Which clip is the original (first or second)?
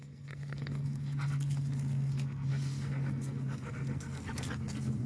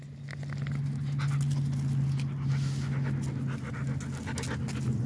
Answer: second